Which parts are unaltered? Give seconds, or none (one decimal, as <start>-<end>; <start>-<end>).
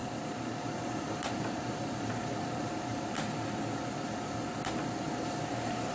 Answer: 2.9-5.5